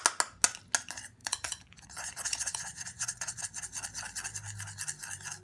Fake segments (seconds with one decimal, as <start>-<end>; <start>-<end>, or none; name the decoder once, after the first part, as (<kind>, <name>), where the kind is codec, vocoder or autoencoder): 1.2-3.4 (vocoder, Vocos)